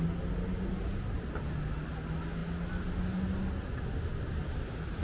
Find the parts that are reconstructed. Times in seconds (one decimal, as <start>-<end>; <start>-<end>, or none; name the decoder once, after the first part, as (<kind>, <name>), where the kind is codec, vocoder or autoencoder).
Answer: none